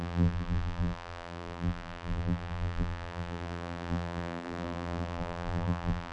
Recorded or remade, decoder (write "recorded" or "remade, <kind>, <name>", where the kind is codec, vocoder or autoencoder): remade, vocoder, BigVGAN v2